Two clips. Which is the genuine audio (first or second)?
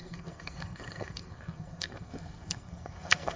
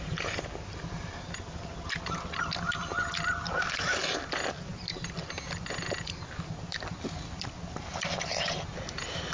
second